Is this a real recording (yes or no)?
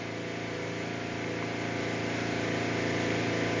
yes